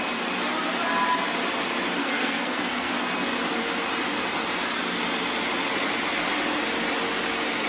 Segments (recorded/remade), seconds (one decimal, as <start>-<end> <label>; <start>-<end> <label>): 0.0-2.0 recorded; 2.0-2.9 remade; 2.9-7.7 recorded